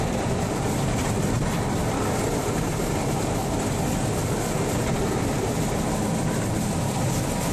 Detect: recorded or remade recorded